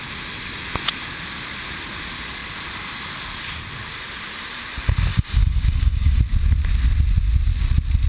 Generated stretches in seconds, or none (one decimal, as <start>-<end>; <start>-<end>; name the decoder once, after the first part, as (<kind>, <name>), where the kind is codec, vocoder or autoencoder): 5.1-6.2 (codec, DAC)